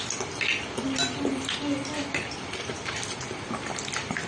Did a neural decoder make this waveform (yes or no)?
no